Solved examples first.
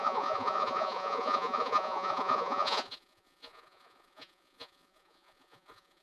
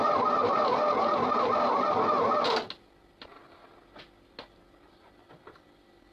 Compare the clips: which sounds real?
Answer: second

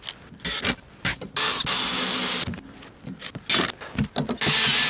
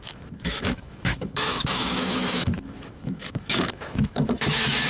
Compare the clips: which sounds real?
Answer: first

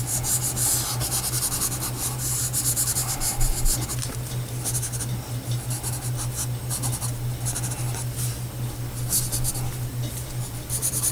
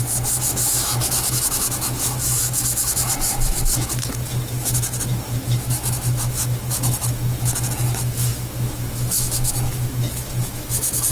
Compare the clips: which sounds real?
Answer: first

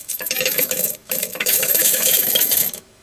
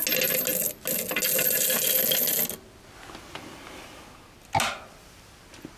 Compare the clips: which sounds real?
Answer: second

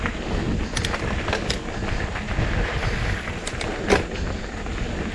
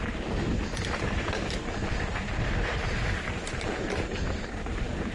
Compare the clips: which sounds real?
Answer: first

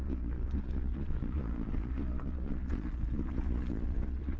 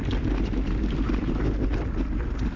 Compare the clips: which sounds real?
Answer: second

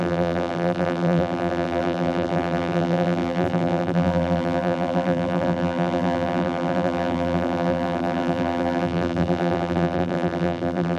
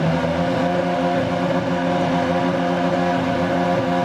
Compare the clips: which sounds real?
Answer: second